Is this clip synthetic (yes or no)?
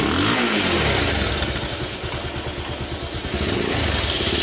no